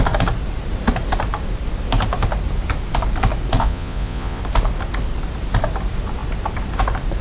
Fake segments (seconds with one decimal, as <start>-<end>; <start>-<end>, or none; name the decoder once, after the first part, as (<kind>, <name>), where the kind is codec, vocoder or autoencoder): 3.6-4.4 (vocoder, Vocos)